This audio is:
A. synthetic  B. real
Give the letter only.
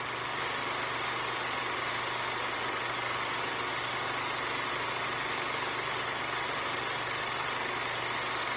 B